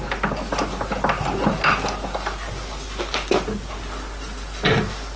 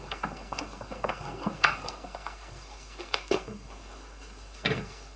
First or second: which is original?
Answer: first